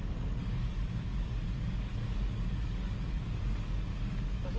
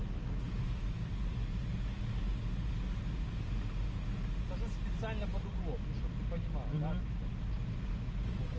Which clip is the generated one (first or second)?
first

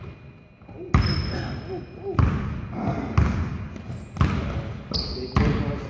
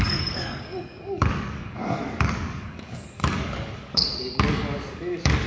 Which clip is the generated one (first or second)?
second